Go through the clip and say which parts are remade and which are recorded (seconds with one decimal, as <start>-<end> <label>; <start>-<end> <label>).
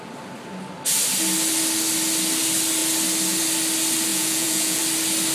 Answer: 0.0-4.1 recorded; 4.1-4.8 remade; 4.8-5.3 recorded